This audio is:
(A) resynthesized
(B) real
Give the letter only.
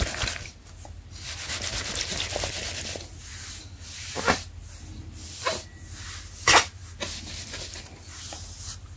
B